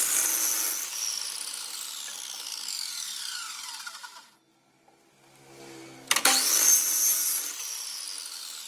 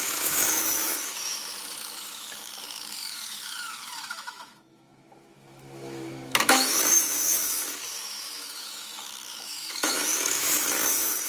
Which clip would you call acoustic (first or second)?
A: first